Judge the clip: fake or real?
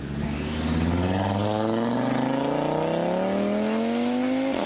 real